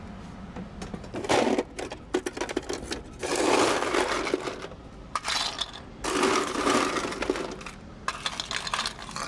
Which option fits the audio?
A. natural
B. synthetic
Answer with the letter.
A